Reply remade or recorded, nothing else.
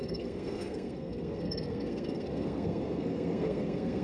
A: remade